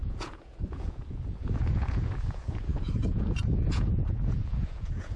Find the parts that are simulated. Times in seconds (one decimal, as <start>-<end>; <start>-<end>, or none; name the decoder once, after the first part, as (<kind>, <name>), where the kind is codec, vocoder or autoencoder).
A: 0.0-5.2 (vocoder, Vocos)